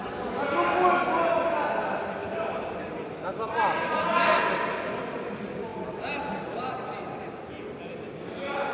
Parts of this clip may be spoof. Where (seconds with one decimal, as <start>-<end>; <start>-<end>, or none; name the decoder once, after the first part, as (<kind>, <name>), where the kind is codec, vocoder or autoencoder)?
none